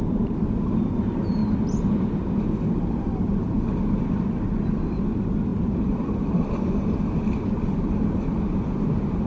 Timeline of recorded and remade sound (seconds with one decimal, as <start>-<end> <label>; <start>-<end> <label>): 0.0-9.3 recorded